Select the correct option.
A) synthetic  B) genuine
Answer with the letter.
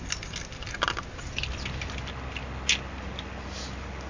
B